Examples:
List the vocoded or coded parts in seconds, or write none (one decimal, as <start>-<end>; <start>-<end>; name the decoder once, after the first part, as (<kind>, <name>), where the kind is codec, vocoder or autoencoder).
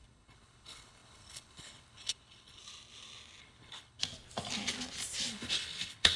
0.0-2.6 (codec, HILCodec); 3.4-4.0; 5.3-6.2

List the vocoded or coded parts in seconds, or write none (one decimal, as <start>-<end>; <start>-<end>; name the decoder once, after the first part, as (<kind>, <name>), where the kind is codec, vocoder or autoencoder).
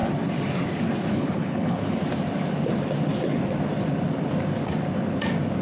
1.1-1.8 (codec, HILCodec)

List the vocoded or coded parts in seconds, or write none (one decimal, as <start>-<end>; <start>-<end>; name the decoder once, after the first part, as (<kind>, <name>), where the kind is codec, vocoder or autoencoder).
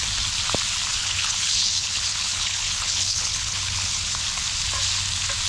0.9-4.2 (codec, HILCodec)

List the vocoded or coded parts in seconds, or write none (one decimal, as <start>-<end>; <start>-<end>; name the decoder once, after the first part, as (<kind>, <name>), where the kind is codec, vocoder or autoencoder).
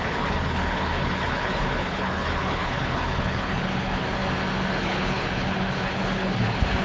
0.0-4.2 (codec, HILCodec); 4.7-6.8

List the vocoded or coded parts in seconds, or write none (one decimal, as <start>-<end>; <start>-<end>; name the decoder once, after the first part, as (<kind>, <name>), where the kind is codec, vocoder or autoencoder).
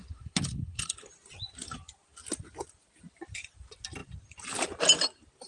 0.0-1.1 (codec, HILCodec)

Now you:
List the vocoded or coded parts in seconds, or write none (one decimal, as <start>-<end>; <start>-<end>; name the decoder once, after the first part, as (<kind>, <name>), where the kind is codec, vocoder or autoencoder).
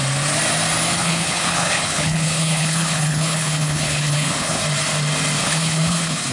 1.0-4.6 (codec, HILCodec); 5.4-6.3